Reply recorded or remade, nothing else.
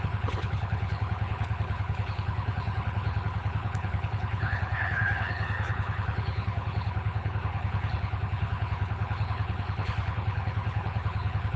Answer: remade